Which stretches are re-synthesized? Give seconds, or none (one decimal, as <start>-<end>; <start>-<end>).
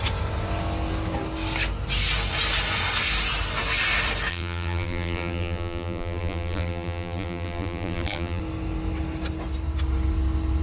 4.3-8.4